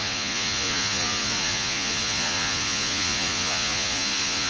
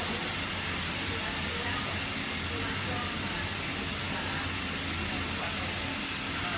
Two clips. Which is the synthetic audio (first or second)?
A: first